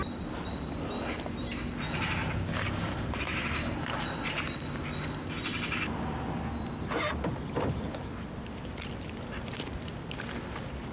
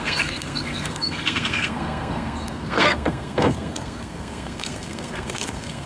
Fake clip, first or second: second